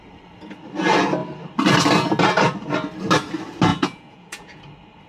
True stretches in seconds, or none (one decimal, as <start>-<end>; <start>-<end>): 0.0-3.7; 4.6-5.1